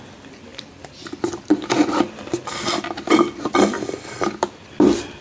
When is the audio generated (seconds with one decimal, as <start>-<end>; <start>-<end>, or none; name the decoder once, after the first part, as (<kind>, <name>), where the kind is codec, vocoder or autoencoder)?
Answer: none